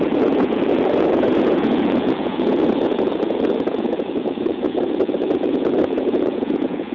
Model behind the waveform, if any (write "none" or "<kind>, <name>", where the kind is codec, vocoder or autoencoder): vocoder, Vocos